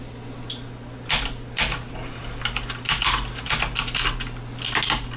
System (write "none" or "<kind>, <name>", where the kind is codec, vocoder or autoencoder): none